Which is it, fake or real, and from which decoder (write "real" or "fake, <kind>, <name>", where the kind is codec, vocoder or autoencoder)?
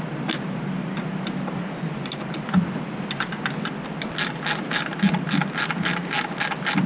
real